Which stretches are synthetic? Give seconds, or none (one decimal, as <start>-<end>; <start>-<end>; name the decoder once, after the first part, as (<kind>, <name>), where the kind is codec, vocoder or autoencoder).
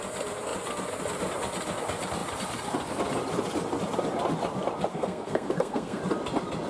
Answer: 4.9-6.0 (codec, SNAC)